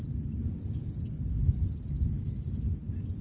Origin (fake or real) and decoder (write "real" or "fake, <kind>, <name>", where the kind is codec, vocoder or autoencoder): real